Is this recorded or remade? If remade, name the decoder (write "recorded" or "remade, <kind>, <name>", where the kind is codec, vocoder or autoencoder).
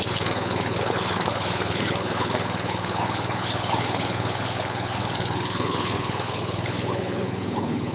remade, codec, HILCodec